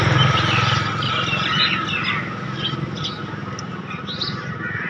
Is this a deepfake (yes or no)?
no